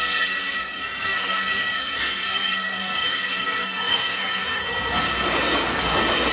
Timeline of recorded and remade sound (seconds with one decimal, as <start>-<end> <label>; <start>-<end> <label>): 0.0-4.6 remade; 4.6-6.3 recorded